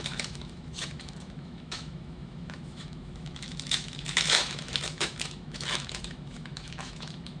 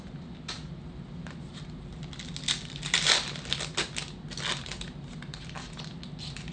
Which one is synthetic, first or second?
first